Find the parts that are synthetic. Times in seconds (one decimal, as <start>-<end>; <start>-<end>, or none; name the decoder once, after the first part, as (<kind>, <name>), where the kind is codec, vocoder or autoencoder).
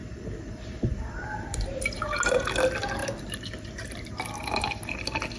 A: 0.0-2.0 (vocoder, BigVGAN v2); 3.0-4.1